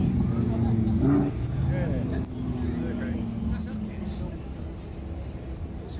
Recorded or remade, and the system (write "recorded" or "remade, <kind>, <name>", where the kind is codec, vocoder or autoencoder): recorded